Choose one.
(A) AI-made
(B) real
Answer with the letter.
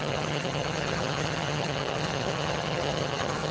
A